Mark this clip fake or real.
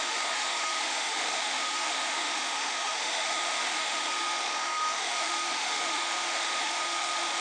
fake